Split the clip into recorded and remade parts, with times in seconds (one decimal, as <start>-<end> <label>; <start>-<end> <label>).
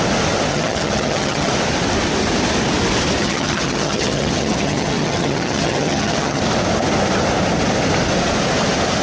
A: 0.0-0.5 recorded; 0.5-1.5 remade; 1.5-3.2 recorded; 3.2-6.4 remade; 6.4-9.0 recorded